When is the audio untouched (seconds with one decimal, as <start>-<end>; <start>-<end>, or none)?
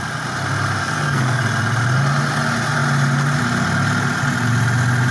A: 0.0-0.8; 1.4-5.1